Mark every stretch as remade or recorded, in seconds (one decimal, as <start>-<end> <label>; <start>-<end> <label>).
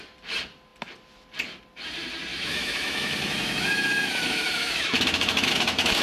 0.0-2.3 recorded; 2.3-6.0 remade